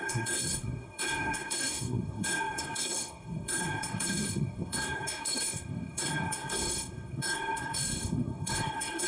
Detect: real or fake fake